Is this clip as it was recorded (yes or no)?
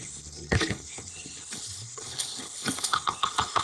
no